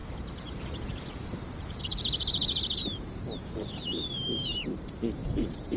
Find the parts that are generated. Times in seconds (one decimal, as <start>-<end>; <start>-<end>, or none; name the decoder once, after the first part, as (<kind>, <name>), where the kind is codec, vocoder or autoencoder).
0.0-5.8 (vocoder, BigVGAN v2)